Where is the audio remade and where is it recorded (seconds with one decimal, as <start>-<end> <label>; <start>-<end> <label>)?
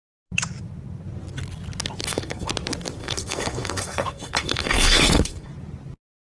0.0-2.0 recorded; 2.0-2.5 remade; 2.5-3.0 recorded; 3.0-5.5 remade; 5.5-6.2 recorded